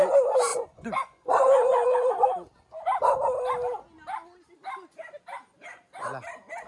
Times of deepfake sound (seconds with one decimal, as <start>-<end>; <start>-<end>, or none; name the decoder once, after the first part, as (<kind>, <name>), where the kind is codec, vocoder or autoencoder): 0.5-2.1 (vocoder, Vocos)